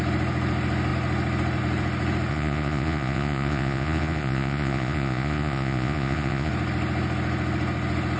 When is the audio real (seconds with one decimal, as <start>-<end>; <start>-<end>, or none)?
0.0-2.3; 6.5-8.2